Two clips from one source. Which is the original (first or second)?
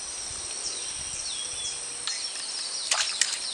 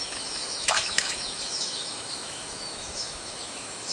first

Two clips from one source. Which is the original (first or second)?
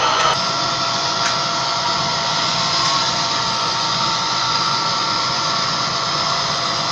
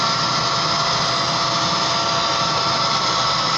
second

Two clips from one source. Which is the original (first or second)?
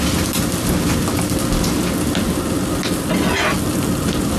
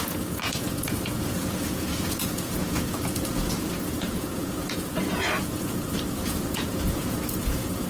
first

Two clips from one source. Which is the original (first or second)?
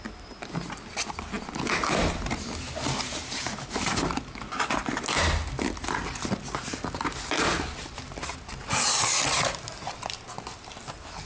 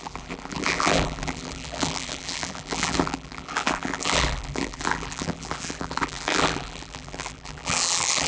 first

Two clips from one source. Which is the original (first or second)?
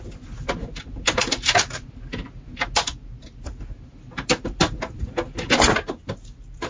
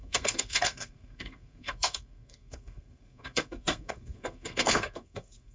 first